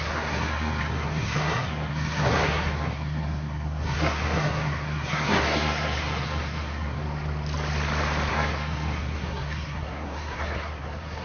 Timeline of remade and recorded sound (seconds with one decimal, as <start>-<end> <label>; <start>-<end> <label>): 0.0-7.0 remade; 7.0-8.3 recorded; 8.3-11.2 remade